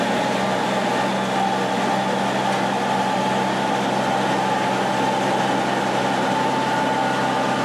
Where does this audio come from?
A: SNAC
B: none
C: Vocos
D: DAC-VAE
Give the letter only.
B